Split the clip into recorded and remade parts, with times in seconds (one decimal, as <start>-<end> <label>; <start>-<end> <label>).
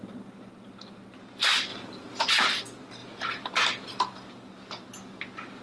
0.0-1.7 recorded; 1.7-2.4 remade; 2.4-3.0 recorded; 3.0-4.0 remade; 4.0-5.6 recorded